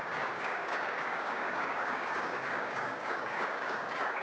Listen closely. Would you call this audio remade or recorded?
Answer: remade